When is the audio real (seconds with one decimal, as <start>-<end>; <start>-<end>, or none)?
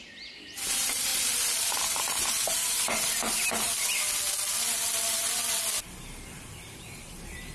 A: 3.7-6.5